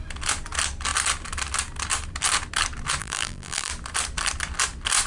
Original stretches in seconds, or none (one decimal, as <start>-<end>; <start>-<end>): 0.0-3.0; 3.7-5.1